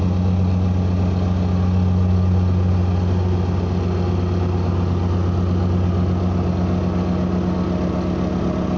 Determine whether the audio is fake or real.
real